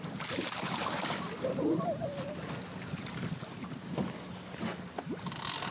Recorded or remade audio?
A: recorded